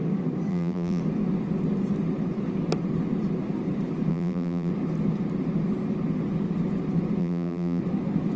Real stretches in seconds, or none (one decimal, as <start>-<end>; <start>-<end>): 0.0-0.5; 1.0-4.1; 4.7-7.2; 7.8-8.4